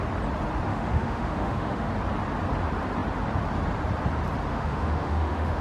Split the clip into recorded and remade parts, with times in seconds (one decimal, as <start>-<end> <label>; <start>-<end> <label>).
0.0-0.7 recorded; 0.7-1.9 remade; 1.9-4.5 recorded; 4.5-5.6 remade